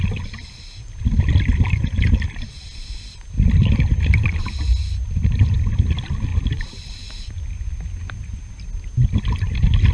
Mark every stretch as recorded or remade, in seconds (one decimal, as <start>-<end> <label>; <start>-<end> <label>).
0.0-9.9 recorded